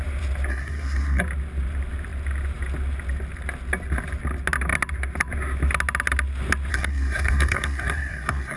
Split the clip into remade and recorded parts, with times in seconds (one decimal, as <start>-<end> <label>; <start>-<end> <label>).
0.0-0.5 recorded; 0.5-1.2 remade; 1.2-6.7 recorded; 6.7-8.6 remade

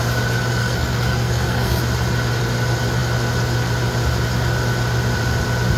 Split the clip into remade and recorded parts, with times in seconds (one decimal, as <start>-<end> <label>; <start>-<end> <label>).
0.0-0.6 recorded; 0.6-1.8 remade; 1.8-5.8 recorded

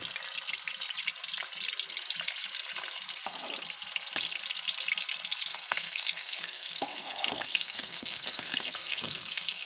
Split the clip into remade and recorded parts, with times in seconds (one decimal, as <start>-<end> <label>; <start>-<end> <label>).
0.0-5.5 recorded; 5.5-9.7 remade